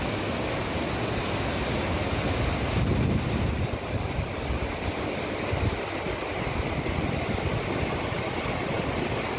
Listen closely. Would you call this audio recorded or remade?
recorded